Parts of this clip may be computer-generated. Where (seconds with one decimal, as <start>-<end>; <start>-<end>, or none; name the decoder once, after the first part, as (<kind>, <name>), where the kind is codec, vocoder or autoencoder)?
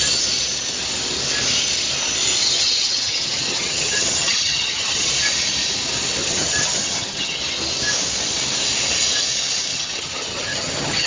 2.4-5.1 (vocoder, HiFi-GAN); 6.2-7.4; 9.7-11.1